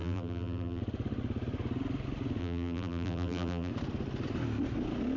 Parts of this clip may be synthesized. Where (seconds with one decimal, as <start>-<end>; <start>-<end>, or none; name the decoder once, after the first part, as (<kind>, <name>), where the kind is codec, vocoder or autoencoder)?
0.0-0.8 (vocoder, BigVGAN v2); 2.4-3.7